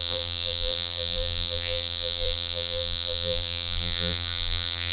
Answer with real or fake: fake